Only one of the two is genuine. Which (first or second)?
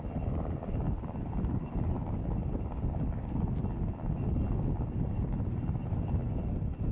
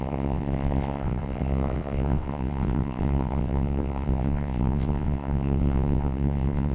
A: first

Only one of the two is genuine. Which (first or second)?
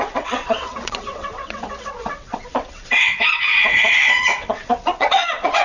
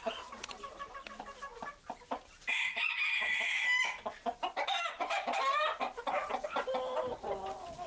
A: second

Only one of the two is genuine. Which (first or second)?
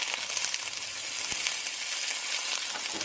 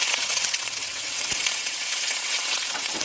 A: first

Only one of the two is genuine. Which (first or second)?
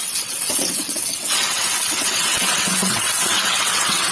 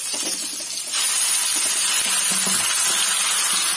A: second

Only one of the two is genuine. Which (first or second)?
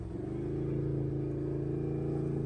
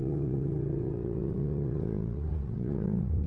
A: first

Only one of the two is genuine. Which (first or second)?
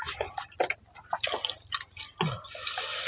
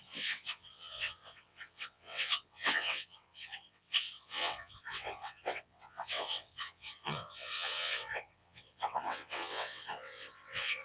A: first